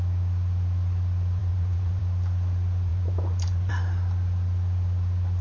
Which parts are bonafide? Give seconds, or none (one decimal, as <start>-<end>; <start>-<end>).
0.0-1.4; 2.0-2.9; 3.7-5.4